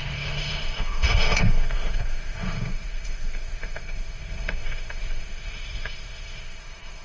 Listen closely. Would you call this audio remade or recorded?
remade